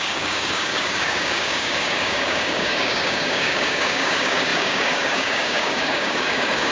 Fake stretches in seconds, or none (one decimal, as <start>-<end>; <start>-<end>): 0.0-6.7